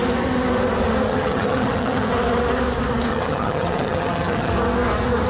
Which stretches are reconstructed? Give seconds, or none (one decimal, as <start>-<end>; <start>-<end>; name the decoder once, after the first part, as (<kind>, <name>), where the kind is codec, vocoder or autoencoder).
1.1-2.1 (vocoder, HiFi-GAN); 3.1-4.5